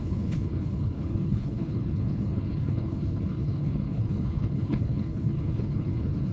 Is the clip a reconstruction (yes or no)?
yes